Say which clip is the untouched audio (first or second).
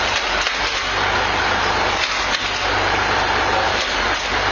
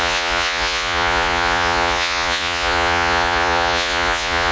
first